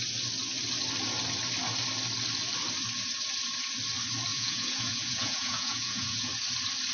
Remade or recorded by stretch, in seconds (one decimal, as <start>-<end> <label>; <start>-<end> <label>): 0.0-4.3 recorded; 4.3-6.3 remade; 6.3-6.9 recorded